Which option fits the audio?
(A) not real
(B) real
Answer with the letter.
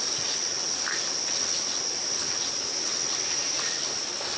B